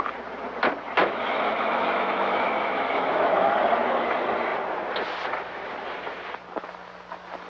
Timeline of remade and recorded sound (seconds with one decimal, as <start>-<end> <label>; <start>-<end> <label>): 0.0-1.0 recorded; 1.0-3.5 remade; 3.5-7.5 recorded